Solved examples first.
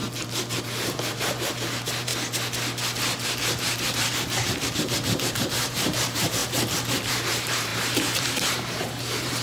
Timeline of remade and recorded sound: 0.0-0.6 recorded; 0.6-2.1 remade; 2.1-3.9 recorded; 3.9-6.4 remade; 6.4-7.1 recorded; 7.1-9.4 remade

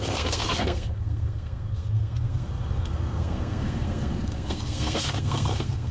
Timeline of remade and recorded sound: 0.0-5.9 remade

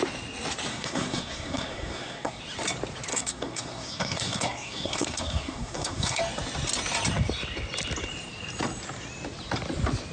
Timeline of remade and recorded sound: 0.0-0.7 recorded; 0.7-2.4 remade; 2.4-3.1 recorded; 3.1-6.2 remade; 6.2-10.1 recorded

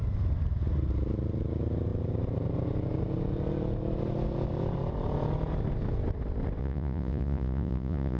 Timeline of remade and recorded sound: 0.0-6.6 recorded; 6.6-8.2 remade

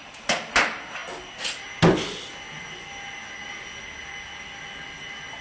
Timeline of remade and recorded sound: 0.0-5.4 recorded

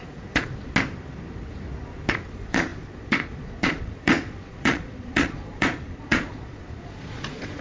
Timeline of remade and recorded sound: 0.0-0.5 remade; 0.5-2.1 recorded; 2.1-7.6 remade

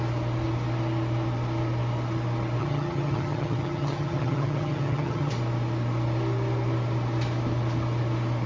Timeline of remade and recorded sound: 0.0-2.6 recorded; 2.6-5.3 remade; 5.3-8.5 recorded

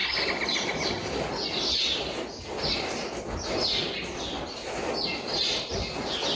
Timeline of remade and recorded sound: 0.0-6.3 recorded